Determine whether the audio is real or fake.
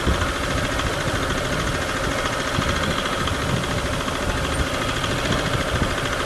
real